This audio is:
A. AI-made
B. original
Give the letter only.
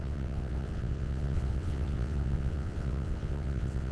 A